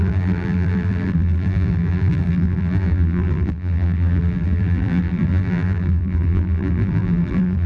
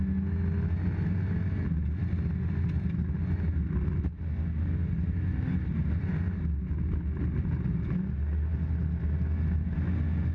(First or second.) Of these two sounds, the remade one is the first